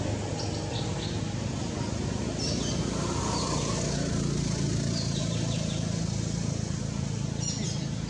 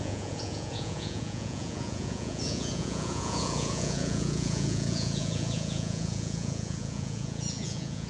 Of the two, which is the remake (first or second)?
second